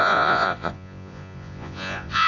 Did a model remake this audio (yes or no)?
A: yes